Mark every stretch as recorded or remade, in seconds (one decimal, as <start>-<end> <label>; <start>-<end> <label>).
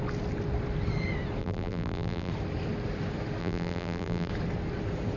0.0-1.4 recorded; 1.4-2.3 remade; 2.3-3.4 recorded; 3.4-4.3 remade; 4.3-5.2 recorded